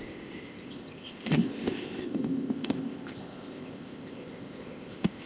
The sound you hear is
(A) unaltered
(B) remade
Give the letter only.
B